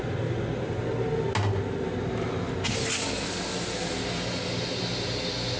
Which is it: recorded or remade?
recorded